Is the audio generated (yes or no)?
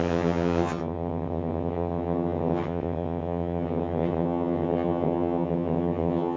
yes